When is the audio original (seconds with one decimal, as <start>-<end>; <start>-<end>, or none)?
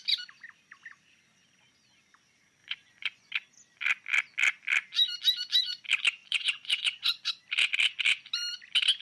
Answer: 0.0-2.6; 3.3-6.2; 7.3-9.0